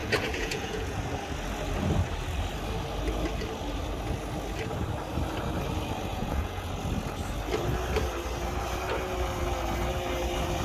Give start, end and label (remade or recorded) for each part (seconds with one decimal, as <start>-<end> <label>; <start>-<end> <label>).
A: 0.0-1.0 remade; 1.0-6.1 recorded; 6.1-6.7 remade; 6.7-10.6 recorded